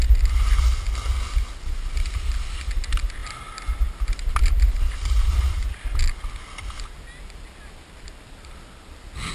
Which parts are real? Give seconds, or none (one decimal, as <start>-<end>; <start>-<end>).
0.0-9.3